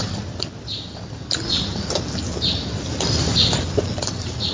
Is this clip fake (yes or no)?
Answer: yes